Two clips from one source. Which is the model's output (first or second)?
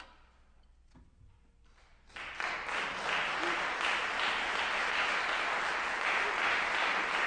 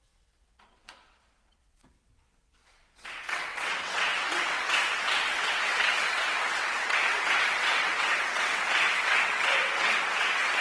second